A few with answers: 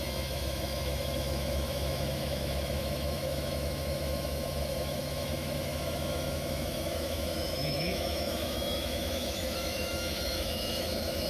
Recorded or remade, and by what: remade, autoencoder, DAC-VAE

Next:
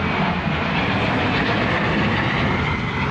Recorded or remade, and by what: recorded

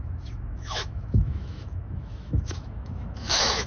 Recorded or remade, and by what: remade, autoencoder, DAC-VAE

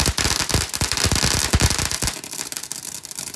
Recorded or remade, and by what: recorded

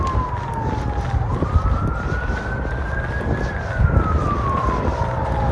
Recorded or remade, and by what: recorded